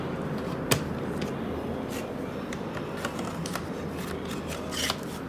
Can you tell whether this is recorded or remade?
recorded